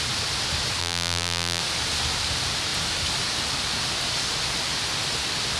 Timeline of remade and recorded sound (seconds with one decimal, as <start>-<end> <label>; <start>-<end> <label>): 0.0-0.8 recorded; 0.8-1.6 remade; 1.6-5.6 recorded